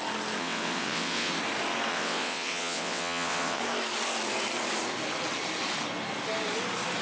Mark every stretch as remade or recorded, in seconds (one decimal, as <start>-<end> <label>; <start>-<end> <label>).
0.0-0.4 recorded; 0.4-1.3 remade; 1.3-1.9 recorded; 1.9-3.6 remade; 3.6-7.0 recorded